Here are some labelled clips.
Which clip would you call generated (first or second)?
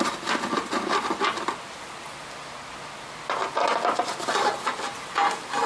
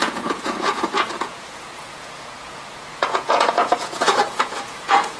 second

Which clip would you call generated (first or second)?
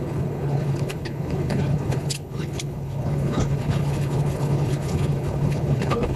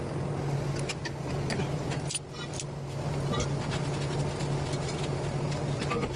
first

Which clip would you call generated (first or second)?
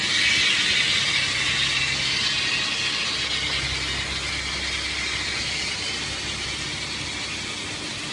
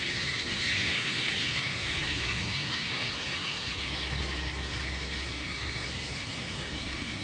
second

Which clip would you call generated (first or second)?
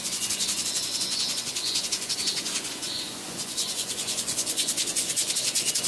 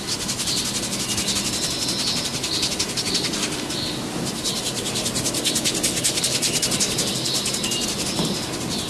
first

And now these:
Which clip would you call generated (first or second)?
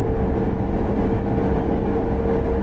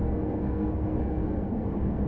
second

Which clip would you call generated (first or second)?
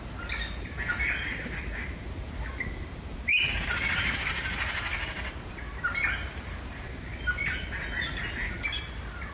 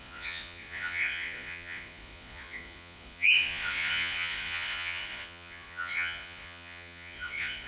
second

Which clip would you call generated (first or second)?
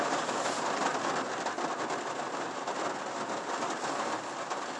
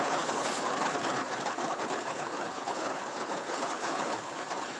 second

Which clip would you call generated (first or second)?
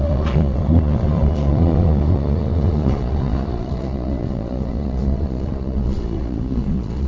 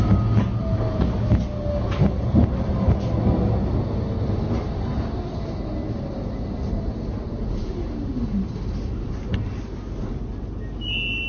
first